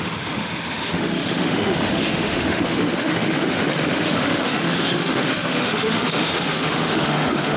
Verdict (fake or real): fake